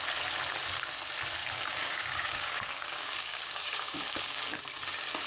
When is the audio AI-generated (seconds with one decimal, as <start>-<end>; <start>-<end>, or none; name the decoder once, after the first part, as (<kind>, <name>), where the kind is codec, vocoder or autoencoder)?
1.4-4.6 (codec, DAC)